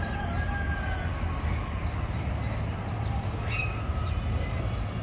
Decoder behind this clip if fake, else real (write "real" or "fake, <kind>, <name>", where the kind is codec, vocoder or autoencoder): real